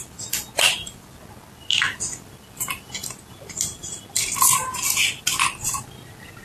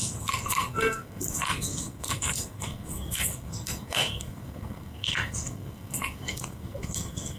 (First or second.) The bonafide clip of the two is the first